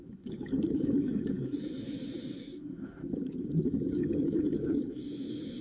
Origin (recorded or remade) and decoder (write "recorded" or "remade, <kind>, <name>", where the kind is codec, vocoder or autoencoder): remade, autoencoder, DAC-VAE